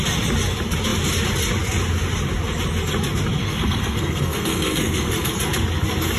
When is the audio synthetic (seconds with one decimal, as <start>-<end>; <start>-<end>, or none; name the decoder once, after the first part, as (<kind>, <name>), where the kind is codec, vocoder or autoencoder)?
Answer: 3.4-5.3 (codec, SNAC)